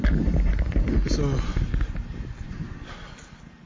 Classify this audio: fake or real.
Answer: real